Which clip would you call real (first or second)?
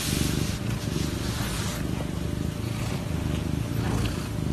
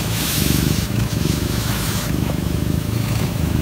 first